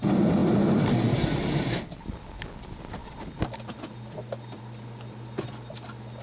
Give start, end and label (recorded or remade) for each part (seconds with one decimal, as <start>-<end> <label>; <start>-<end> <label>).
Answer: 0.0-6.2 recorded